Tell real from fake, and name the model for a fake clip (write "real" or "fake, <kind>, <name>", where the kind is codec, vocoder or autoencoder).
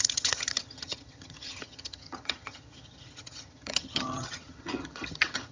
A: fake, vocoder, HiFi-GAN